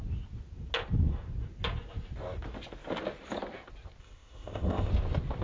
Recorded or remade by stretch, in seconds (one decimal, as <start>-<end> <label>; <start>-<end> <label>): 0.0-4.0 recorded; 4.0-4.9 remade; 4.9-5.4 recorded